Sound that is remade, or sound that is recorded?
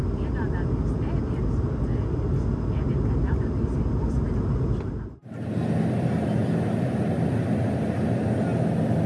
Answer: recorded